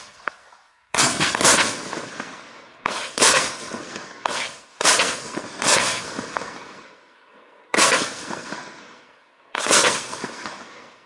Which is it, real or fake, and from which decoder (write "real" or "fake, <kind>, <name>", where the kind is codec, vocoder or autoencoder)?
fake, codec, SNAC